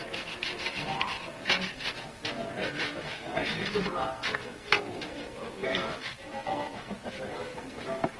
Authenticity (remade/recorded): remade